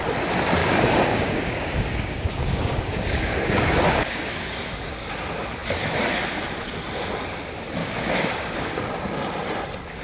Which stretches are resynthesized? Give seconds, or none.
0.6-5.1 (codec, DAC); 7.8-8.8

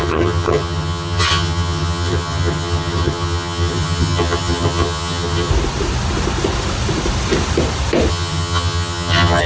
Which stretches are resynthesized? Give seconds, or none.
0.0-5.5 (vocoder, HiFi-GAN); 8.1-9.5

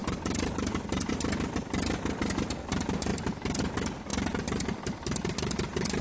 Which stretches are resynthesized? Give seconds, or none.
0.0-1.1 (vocoder, BigVGAN v2)

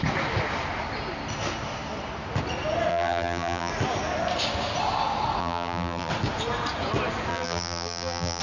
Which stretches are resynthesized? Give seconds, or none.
2.9-3.7 (vocoder, BigVGAN v2); 5.4-6.1; 7.3-8.4